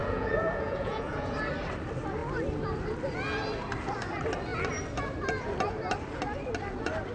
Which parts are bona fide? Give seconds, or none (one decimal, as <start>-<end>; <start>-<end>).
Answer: 1.3-7.1